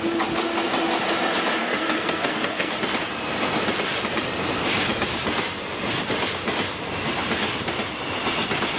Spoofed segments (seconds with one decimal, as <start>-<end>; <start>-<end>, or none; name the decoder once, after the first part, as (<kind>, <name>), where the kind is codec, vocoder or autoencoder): 1.6-2.7 (codec, SNAC)